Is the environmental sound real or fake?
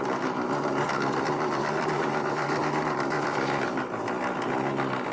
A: fake